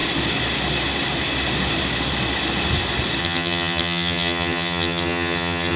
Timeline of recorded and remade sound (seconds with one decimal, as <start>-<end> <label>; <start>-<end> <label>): 0.0-3.2 recorded; 3.2-5.8 remade